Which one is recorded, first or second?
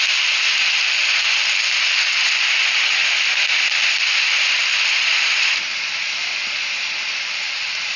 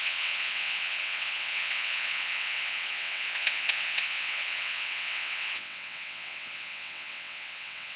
first